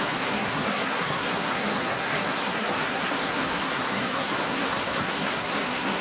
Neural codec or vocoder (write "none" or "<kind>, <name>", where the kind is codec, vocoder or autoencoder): codec, SNAC